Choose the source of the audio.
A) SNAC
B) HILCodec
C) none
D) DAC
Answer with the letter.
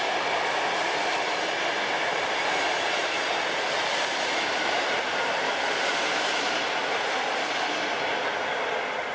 C